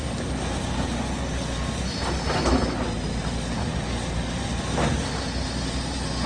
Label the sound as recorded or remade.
recorded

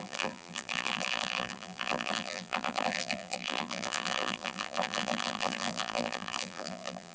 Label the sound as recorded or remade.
remade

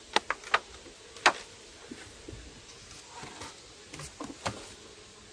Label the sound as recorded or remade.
recorded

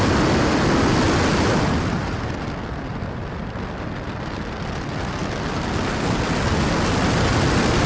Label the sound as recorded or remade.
recorded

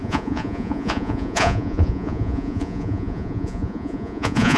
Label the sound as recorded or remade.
remade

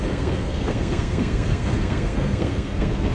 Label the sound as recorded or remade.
remade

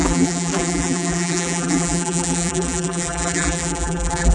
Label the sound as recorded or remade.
remade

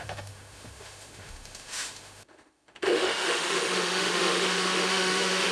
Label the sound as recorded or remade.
remade